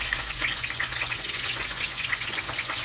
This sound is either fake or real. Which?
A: fake